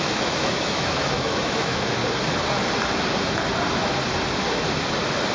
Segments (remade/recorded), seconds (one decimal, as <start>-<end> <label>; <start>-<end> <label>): 0.0-2.0 remade; 2.0-5.3 recorded